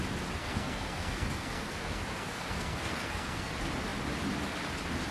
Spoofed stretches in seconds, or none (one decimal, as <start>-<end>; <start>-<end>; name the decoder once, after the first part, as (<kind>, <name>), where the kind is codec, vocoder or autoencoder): 0.4-3.5 (codec, SNAC)